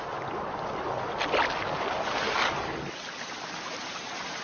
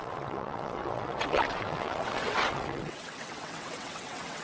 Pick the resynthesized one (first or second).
second